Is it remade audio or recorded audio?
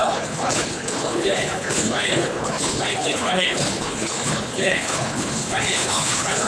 remade